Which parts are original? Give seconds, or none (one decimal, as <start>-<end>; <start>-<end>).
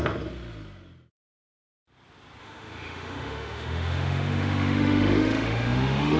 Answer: 0.0-2.4